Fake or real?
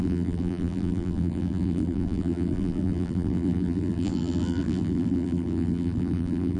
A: fake